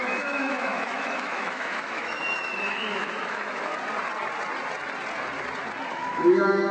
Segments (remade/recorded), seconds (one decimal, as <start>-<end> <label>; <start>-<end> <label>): 0.0-3.7 remade; 3.7-5.9 recorded; 5.9-6.7 remade